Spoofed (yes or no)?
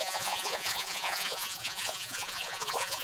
yes